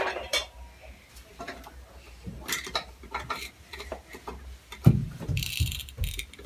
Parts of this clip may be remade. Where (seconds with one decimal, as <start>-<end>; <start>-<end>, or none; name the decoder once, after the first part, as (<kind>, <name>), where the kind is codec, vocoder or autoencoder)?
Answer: 0.0-3.9 (vocoder, BigVGAN v2); 5.0-5.5